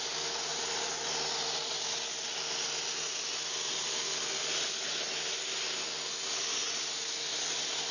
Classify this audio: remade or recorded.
recorded